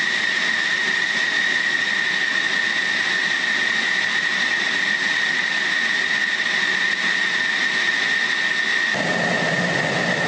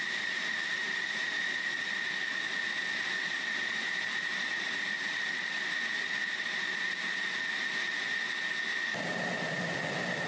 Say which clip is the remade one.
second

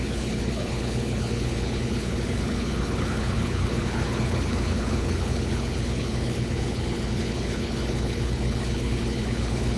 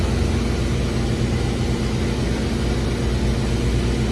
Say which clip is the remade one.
first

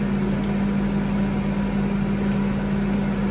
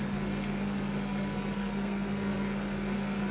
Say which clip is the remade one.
second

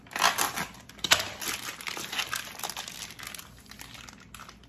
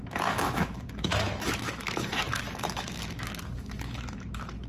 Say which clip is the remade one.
second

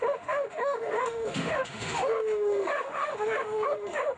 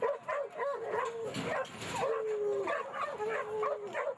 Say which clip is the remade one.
first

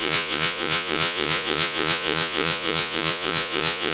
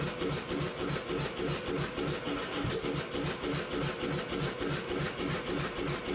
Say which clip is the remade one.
first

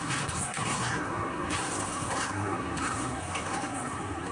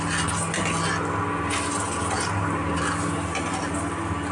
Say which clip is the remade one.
first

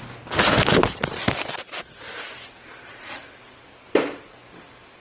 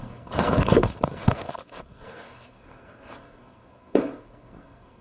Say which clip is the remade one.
second